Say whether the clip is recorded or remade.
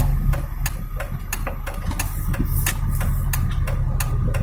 recorded